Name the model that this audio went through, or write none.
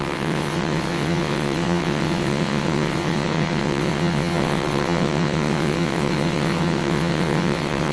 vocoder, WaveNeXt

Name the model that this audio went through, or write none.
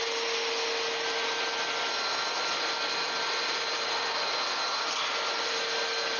none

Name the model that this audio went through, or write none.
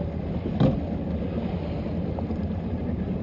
none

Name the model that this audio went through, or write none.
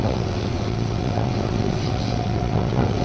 vocoder, WaveNeXt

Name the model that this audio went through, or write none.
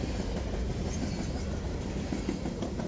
none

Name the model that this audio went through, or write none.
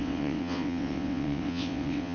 vocoder, WaveNeXt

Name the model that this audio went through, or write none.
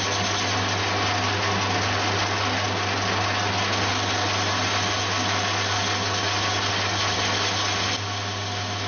none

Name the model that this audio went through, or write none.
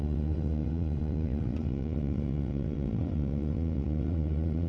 vocoder, WaveNeXt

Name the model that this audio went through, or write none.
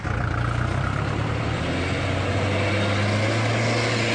none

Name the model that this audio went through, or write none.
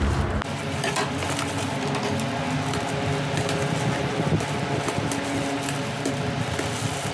none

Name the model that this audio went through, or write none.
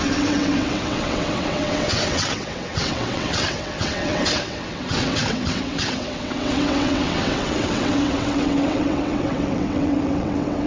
vocoder, WaveNeXt